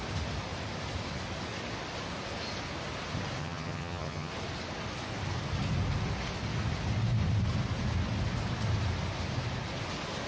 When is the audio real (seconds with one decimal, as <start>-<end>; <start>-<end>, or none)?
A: 0.0-3.4; 4.3-10.3